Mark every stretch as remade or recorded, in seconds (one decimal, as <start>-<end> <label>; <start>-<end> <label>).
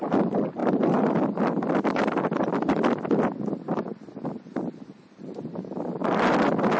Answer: 0.0-6.8 recorded